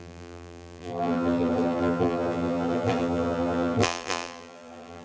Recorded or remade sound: remade